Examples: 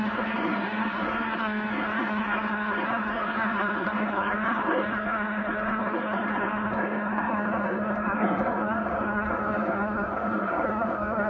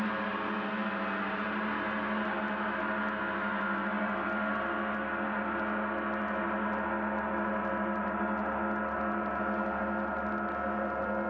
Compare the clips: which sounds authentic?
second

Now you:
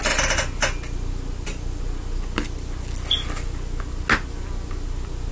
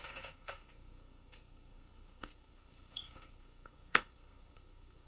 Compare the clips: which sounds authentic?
first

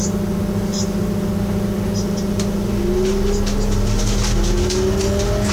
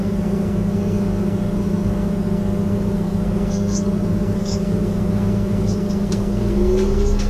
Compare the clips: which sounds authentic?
first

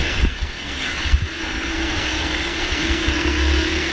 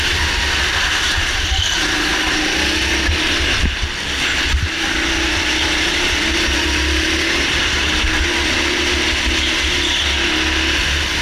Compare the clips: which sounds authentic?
second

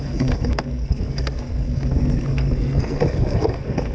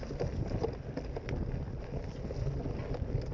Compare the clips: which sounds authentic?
second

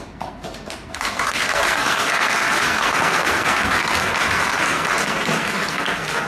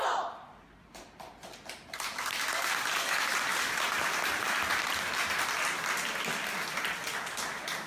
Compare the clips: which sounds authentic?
second